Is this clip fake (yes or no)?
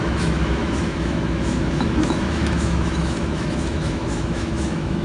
yes